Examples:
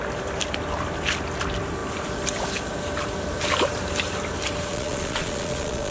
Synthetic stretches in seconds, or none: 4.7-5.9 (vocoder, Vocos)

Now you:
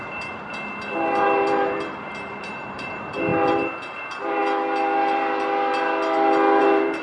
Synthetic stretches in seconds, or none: 0.0-4.4 (vocoder, BigVGAN v2); 6.6-7.0

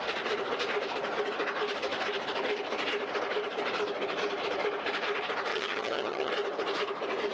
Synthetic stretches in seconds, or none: 5.5-6.3 (vocoder, HiFi-GAN)